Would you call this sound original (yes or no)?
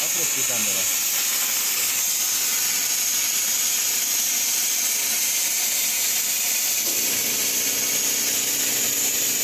yes